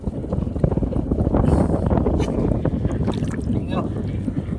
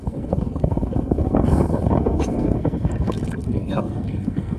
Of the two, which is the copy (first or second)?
second